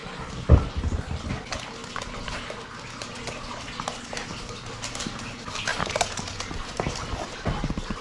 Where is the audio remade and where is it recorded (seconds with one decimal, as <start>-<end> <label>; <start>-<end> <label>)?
0.0-1.3 remade; 1.3-8.0 recorded